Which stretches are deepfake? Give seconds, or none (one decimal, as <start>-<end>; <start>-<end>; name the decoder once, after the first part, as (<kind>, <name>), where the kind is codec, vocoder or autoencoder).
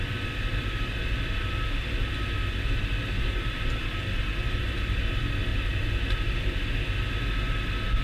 3.3-5.0 (vocoder, BigVGAN v2); 5.5-6.6